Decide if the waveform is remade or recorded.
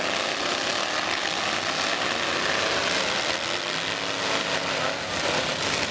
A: recorded